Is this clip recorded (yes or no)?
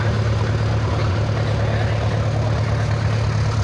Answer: yes